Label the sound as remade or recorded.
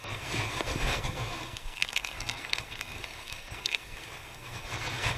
remade